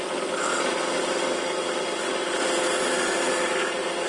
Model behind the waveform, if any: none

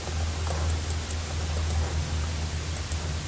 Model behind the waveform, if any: none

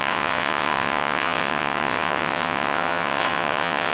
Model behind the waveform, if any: vocoder, WaveNeXt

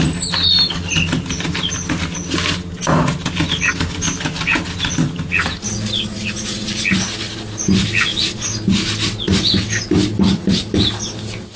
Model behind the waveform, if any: none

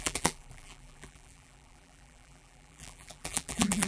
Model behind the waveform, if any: vocoder, BigVGAN v2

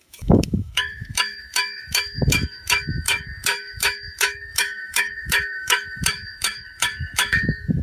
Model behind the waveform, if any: autoencoder, DAC-VAE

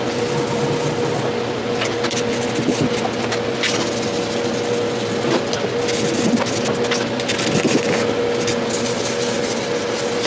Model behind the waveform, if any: none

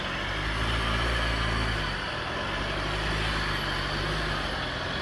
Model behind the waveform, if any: none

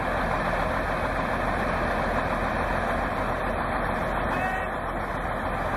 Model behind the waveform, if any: none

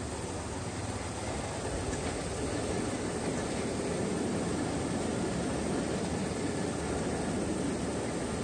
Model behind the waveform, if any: none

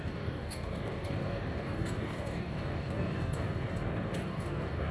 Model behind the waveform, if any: codec, DAC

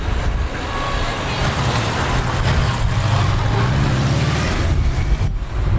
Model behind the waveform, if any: none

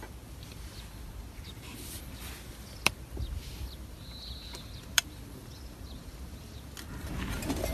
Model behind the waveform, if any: none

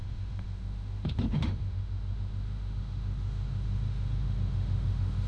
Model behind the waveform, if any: autoencoder, DAC-VAE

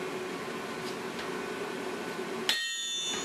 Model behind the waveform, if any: none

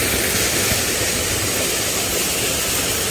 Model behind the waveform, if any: none